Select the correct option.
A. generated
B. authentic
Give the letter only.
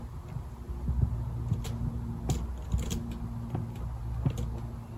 B